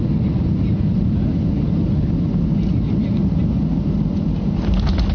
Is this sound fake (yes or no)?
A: no